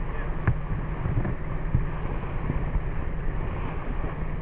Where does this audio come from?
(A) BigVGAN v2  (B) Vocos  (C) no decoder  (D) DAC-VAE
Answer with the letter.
C